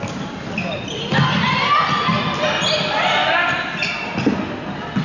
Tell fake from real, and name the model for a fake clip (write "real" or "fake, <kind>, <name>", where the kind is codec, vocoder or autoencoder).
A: real